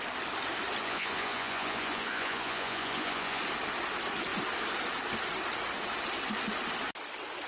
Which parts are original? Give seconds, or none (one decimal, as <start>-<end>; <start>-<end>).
0.0-0.8; 3.4-7.5